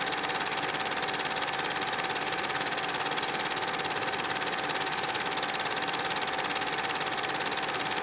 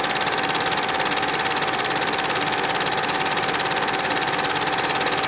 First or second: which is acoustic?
second